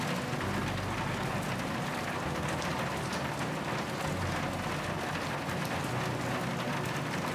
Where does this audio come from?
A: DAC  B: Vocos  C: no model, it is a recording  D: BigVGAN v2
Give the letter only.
C